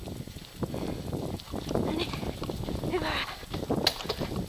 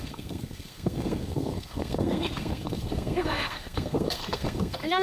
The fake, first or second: second